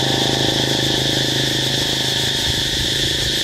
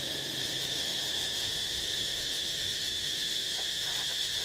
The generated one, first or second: second